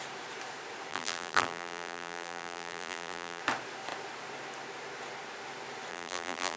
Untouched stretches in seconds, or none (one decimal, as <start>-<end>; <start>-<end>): 0.0-0.9; 3.4-5.9